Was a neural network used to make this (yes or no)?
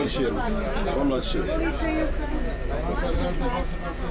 no